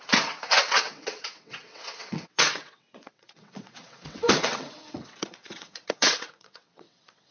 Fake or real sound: fake